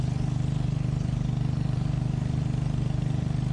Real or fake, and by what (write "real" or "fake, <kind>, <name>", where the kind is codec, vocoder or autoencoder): real